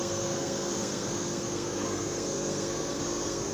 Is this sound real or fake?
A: fake